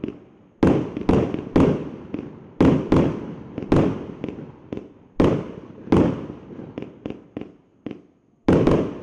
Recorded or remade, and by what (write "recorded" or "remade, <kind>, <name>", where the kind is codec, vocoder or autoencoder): recorded